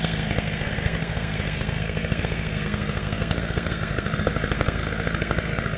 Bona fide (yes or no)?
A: no